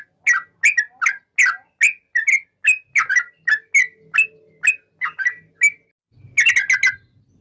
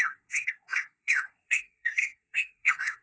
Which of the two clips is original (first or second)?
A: first